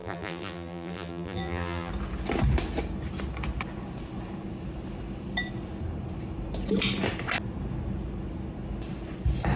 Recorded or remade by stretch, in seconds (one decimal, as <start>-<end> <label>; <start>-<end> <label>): 0.0-1.9 remade; 1.9-9.6 recorded

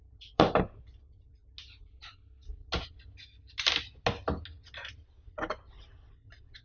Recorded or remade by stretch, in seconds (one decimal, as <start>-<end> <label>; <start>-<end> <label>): 0.0-1.4 remade; 1.4-5.2 recorded; 5.2-6.6 remade